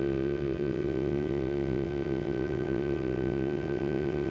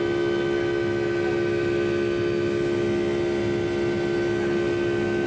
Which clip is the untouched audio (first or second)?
second